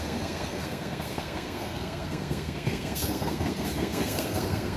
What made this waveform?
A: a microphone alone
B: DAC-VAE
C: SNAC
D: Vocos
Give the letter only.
C